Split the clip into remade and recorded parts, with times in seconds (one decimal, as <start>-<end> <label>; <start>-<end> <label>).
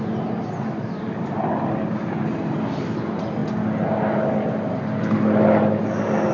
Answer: 0.0-6.3 recorded